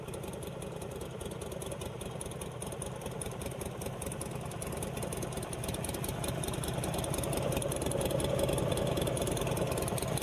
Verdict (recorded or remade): recorded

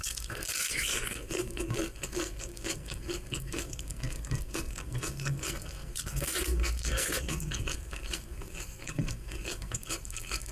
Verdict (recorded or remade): remade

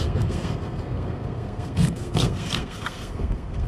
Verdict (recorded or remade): remade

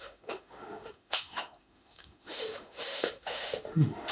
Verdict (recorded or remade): remade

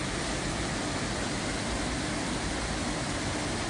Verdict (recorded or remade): recorded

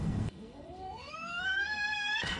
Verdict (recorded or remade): remade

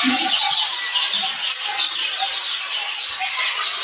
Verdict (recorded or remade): remade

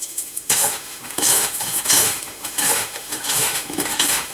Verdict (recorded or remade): remade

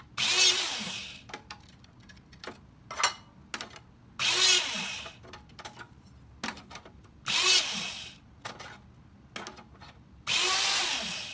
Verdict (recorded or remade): recorded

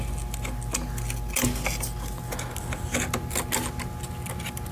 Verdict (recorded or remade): recorded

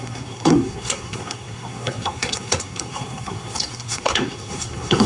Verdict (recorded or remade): remade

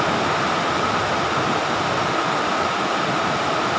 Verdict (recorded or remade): recorded